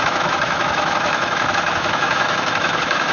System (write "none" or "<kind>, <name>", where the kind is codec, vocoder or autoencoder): autoencoder, DAC-VAE